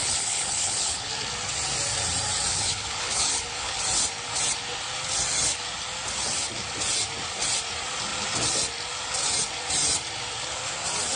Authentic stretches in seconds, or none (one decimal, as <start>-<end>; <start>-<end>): 1.1-2.5; 3.8-11.2